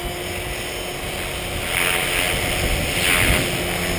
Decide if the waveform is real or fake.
real